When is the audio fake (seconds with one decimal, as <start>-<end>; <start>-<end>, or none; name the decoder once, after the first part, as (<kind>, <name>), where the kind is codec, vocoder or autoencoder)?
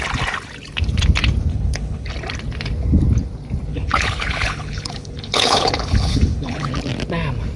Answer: 1.5-2.1 (codec, HILCodec); 3.7-6.7